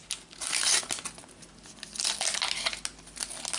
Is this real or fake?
real